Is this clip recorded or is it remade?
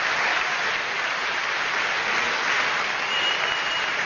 recorded